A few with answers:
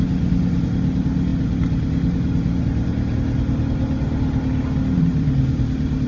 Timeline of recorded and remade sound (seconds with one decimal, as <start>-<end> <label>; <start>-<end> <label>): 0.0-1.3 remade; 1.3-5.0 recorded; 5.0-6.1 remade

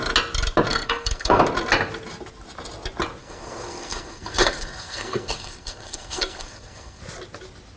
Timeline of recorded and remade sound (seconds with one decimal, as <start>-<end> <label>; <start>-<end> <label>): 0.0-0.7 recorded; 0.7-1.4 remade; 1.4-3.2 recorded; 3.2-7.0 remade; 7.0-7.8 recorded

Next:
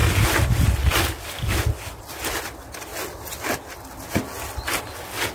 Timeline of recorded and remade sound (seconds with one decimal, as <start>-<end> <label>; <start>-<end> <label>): 0.0-5.3 recorded

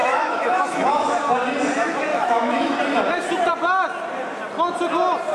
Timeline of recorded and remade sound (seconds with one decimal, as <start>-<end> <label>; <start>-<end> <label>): 0.0-1.2 remade; 1.2-2.1 recorded; 2.1-2.8 remade; 2.8-5.3 recorded